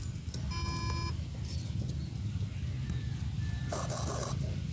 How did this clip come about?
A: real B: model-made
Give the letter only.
A